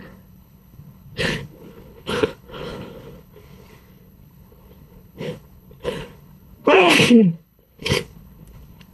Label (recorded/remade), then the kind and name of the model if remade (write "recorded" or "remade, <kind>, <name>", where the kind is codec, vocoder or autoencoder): remade, codec, HILCodec